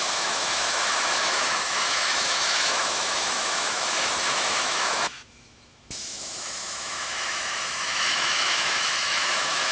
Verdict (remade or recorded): remade